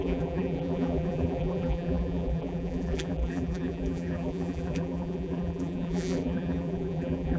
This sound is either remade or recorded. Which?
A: remade